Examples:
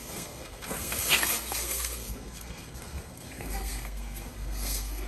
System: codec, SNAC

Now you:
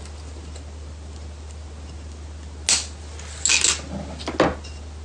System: none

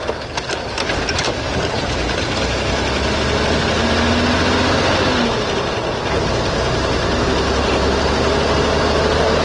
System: none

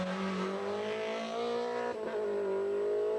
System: none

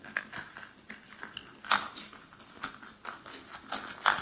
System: none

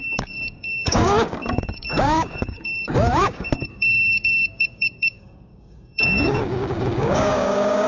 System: codec, DAC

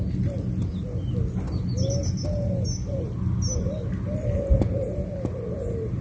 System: none